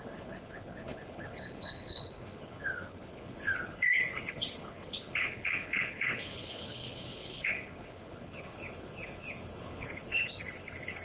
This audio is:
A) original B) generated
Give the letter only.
B